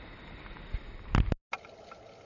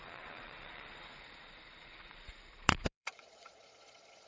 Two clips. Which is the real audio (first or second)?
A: first